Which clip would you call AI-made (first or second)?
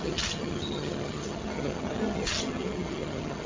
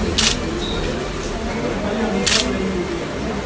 first